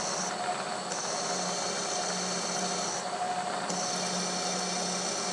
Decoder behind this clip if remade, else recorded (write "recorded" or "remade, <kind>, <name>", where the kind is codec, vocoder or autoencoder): recorded